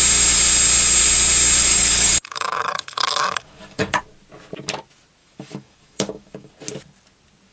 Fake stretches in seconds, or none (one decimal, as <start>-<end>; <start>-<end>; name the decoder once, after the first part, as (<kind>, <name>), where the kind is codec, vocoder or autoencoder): 1.7-4.0 (codec, DAC); 5.2-6.5